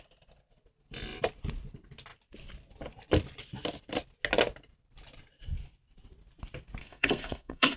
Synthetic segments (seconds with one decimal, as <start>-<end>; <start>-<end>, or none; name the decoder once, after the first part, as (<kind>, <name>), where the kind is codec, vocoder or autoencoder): 6.8-7.8 (codec, SNAC)